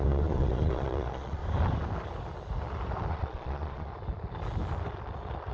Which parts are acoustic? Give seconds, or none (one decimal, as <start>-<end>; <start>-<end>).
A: 1.4-3.1; 3.9-5.5